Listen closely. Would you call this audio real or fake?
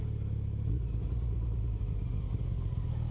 real